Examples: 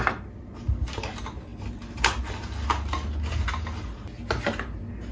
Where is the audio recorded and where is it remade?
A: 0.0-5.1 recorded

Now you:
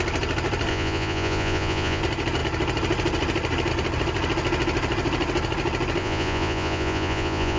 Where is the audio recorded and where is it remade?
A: 0.0-0.7 recorded; 0.7-2.0 remade; 2.0-6.0 recorded; 6.0-7.6 remade

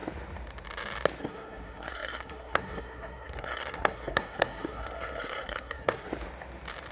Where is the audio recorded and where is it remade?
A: 0.0-1.2 recorded; 1.2-6.1 remade; 6.1-6.9 recorded

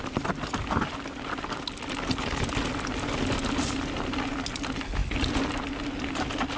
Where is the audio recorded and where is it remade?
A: 0.0-6.6 recorded

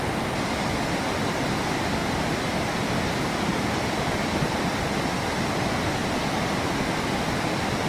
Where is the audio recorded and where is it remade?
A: 0.0-7.9 recorded